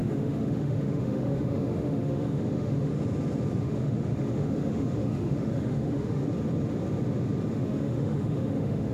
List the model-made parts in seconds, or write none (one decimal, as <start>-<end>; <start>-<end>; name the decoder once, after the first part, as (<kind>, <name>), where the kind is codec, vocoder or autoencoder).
0.0-2.9 (autoencoder, DAC-VAE); 3.6-6.2; 7.5-8.9